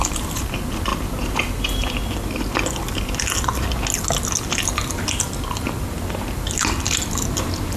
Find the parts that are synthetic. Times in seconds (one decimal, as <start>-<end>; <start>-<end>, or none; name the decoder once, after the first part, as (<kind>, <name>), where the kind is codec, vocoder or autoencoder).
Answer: none